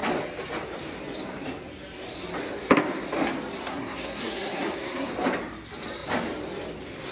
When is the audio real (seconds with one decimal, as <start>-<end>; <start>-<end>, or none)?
0.0-3.6; 5.1-7.1